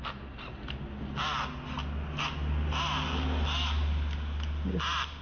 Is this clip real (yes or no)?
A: yes